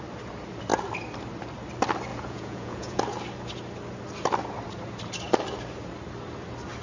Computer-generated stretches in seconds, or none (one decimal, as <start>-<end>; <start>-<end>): 2.1-3.0